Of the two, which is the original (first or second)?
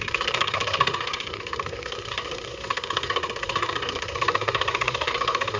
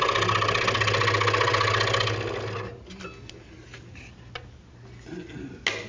second